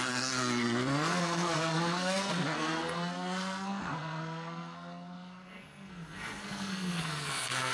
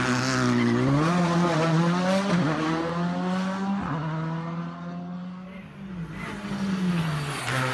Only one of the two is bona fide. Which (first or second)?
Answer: second